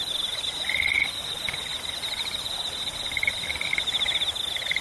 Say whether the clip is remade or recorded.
recorded